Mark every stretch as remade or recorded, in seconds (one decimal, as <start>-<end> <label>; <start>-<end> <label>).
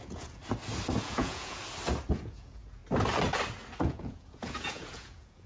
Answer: 0.0-0.4 remade; 0.4-1.0 recorded; 1.0-1.6 remade; 1.6-2.1 recorded; 2.1-2.8 remade; 2.8-3.8 recorded; 3.8-5.5 remade